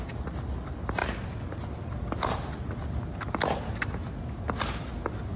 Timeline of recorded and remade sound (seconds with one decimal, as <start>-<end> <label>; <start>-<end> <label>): 0.0-5.4 recorded